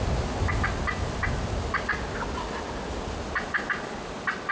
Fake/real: real